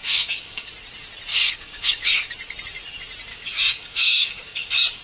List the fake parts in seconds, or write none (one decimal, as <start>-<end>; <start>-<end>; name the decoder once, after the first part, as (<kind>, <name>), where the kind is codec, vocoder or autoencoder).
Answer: 0.0-0.7 (codec, DAC); 1.3-2.3; 3.3-5.0